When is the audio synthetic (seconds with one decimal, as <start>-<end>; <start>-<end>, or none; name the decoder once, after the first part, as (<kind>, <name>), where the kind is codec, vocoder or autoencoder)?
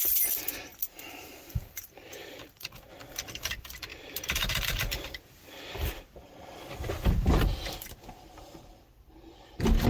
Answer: 0.7-2.9 (vocoder, BigVGAN v2); 3.9-5.2